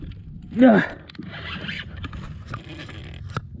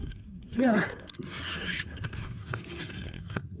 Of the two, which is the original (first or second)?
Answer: first